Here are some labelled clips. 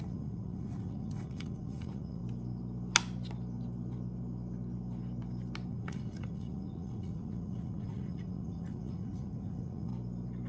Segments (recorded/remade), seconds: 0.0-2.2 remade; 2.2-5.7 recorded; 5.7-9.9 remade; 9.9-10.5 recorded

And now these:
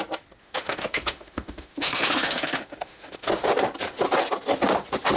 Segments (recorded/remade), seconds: 0.0-0.4 recorded; 0.4-3.5 remade; 3.5-5.2 recorded

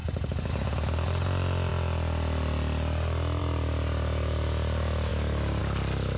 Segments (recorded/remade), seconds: 0.0-6.2 recorded

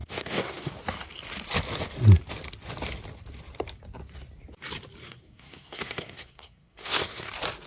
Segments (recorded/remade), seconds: 0.0-0.7 remade; 0.7-5.0 recorded; 5.0-7.3 remade; 7.3-7.7 recorded

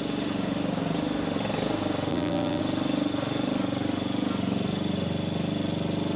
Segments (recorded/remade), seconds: 0.0-2.1 recorded; 2.1-2.6 remade; 2.6-6.2 recorded

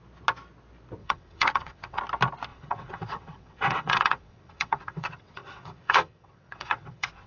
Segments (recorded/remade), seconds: 0.0-1.0 recorded; 1.0-2.0 remade; 2.0-2.5 recorded; 2.5-7.3 remade

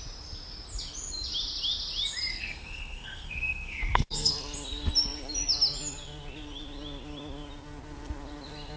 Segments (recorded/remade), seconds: 0.0-2.3 recorded; 2.3-4.3 remade; 4.3-8.8 recorded